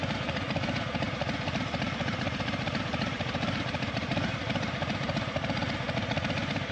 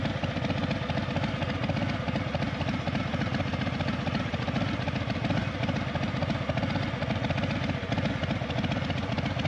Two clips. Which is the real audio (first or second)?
second